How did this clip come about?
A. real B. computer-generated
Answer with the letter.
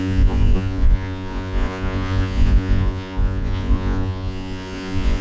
B